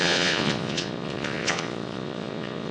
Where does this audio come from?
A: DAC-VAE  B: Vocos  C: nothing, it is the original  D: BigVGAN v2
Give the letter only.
B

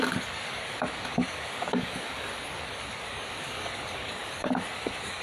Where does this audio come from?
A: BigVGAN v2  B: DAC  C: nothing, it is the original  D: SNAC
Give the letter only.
B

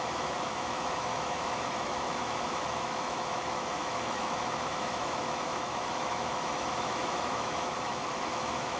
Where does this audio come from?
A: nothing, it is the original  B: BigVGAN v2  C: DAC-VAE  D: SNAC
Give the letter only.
C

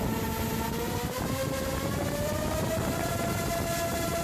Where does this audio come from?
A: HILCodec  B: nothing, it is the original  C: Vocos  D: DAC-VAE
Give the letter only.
B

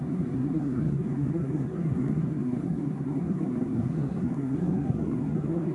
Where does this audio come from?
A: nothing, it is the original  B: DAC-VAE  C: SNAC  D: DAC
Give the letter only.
C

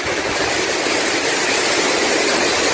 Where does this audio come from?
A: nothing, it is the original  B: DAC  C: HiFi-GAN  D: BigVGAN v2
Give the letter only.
A